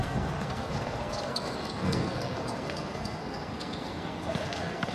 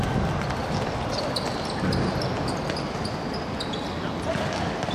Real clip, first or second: second